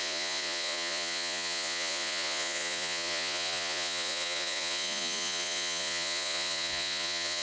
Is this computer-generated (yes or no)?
yes